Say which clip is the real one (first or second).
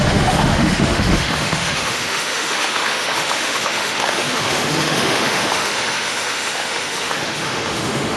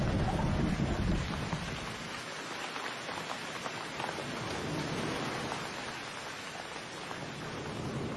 second